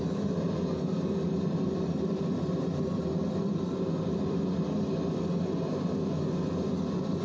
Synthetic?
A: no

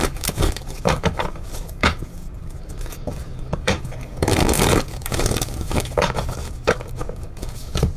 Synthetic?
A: yes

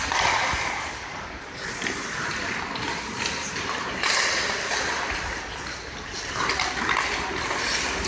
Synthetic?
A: no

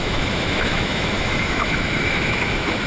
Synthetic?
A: yes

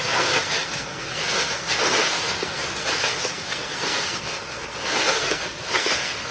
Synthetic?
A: yes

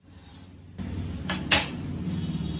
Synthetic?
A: no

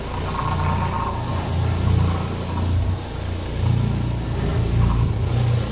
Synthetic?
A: no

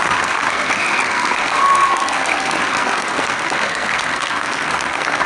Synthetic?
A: yes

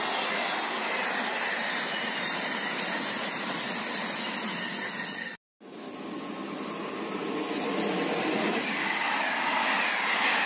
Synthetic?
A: no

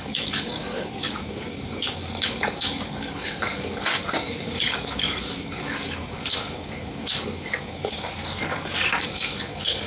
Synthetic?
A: yes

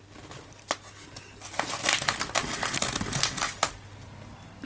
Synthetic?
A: no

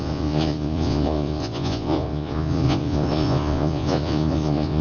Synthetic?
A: yes